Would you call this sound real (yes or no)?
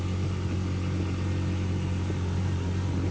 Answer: yes